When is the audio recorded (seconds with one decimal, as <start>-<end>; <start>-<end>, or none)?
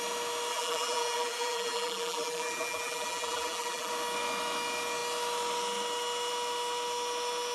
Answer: 0.0-0.5; 3.9-7.5